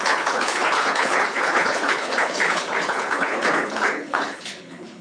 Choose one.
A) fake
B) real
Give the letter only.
A